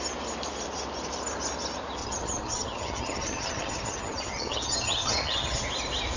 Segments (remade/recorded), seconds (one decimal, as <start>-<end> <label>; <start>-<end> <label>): 0.0-2.0 recorded; 2.0-5.7 remade; 5.7-6.2 recorded

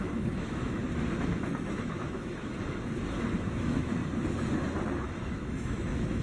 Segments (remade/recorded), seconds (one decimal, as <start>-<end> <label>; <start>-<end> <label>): 0.0-0.8 remade; 0.8-1.4 recorded; 1.4-2.5 remade; 2.5-3.3 recorded; 3.3-4.0 remade; 4.0-5.0 recorded; 5.0-6.2 remade

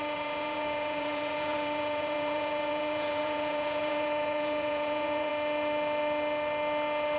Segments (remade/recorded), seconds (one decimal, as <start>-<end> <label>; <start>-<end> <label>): 0.0-5.3 remade; 5.3-7.2 recorded

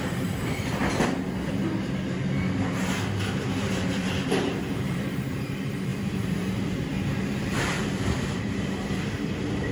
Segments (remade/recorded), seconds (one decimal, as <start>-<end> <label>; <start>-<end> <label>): 0.0-0.8 remade; 0.8-3.8 recorded; 3.8-5.9 remade; 5.9-7.2 recorded; 7.2-9.7 remade

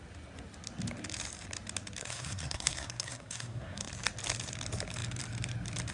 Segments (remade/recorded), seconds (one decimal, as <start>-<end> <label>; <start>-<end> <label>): 0.0-2.0 recorded; 2.0-3.9 remade; 3.9-5.9 recorded

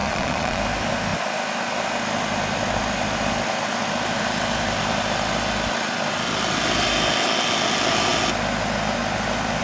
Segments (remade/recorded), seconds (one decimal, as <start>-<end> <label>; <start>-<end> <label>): 0.0-0.6 remade; 0.6-9.6 recorded

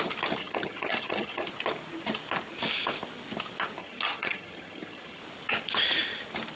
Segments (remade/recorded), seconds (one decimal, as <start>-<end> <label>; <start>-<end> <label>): 0.0-0.4 recorded; 0.4-1.5 remade; 1.5-3.8 recorded; 3.8-5.2 remade; 5.2-6.6 recorded

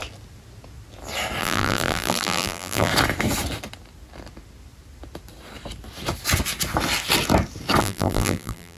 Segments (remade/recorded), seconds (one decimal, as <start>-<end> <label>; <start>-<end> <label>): 0.0-1.4 recorded; 1.4-2.9 remade; 2.9-7.8 recorded; 7.8-8.8 remade